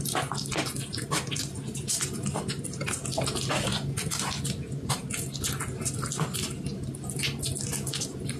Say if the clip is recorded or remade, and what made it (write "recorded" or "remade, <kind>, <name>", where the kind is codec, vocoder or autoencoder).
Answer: recorded